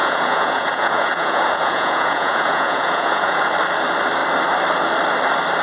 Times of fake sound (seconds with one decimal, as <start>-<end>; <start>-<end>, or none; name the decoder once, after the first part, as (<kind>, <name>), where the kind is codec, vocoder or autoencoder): 0.0-3.4 (vocoder, Vocos)